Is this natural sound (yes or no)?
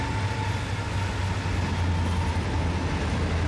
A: yes